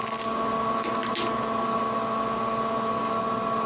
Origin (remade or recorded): recorded